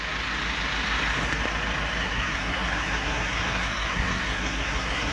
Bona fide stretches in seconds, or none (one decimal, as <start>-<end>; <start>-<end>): 0.0-2.0